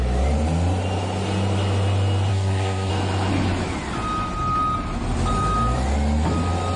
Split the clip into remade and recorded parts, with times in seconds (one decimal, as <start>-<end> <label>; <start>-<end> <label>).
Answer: 0.0-2.3 recorded; 2.3-2.9 remade; 2.9-6.8 recorded